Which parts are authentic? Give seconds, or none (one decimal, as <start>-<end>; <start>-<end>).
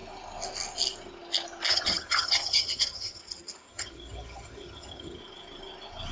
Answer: 0.0-1.7; 3.2-3.7; 5.2-6.1